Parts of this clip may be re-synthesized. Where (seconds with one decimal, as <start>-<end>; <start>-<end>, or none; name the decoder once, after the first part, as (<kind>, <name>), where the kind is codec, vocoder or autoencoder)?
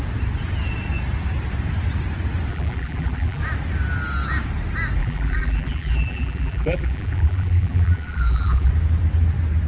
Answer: 2.5-3.4 (vocoder, BigVGAN v2); 5.0-8.7